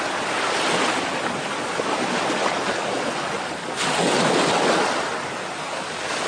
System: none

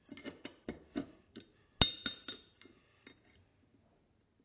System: none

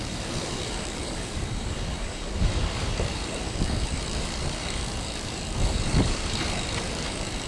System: codec, DAC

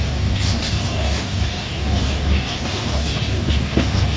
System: codec, DAC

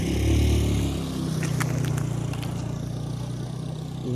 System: none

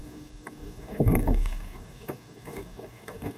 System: codec, DAC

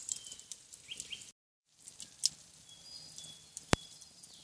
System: none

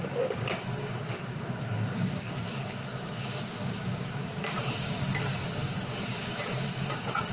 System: codec, DAC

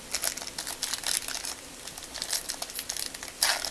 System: none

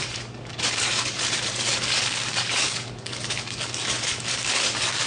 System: codec, DAC